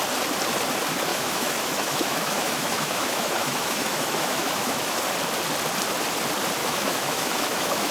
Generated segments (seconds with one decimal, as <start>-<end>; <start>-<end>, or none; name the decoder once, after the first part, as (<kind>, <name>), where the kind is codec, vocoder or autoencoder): 1.1-5.0 (autoencoder, DAC-VAE); 6.6-7.9